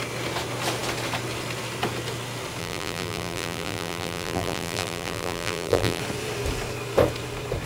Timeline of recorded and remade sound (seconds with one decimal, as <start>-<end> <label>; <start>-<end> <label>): 0.0-2.6 recorded; 2.6-6.0 remade; 6.0-7.7 recorded